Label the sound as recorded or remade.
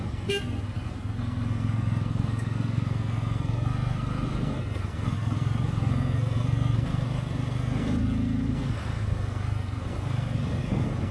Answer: remade